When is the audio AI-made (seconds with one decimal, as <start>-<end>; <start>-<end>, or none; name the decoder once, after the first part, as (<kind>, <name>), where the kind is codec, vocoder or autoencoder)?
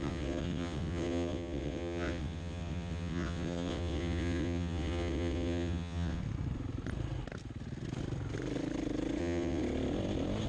0.0-6.2 (vocoder, WaveNeXt); 9.2-9.6